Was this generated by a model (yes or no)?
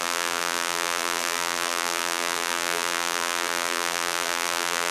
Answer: yes